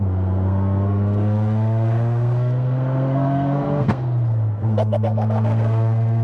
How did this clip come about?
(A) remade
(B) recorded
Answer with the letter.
A